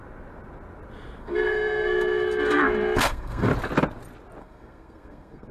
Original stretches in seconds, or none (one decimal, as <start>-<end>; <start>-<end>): 0.0-1.2; 3.5-4.4